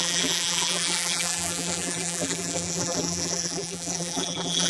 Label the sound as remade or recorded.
remade